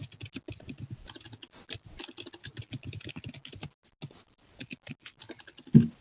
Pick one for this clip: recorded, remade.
recorded